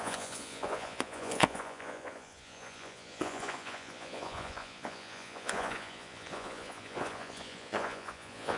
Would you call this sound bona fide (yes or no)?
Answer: no